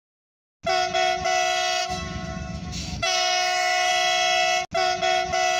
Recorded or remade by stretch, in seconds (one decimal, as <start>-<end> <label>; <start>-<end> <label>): 0.0-1.8 recorded; 1.8-3.9 remade; 3.9-5.6 recorded